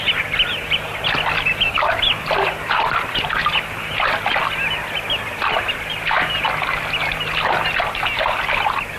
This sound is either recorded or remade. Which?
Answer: recorded